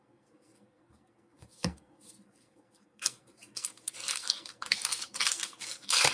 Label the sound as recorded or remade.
remade